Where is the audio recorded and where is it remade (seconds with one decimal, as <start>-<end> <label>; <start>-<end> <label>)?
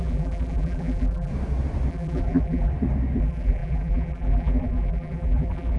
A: 0.0-1.3 remade; 1.3-1.9 recorded; 1.9-2.7 remade; 2.7-3.2 recorded; 3.2-5.8 remade